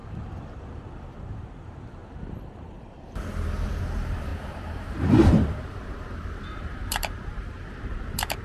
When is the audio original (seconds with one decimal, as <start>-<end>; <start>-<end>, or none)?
0.0-1.1; 2.0-3.8